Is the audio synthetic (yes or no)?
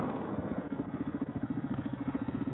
yes